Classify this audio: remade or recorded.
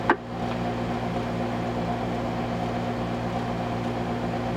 recorded